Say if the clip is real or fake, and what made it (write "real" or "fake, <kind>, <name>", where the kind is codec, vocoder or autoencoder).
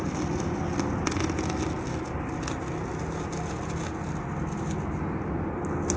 real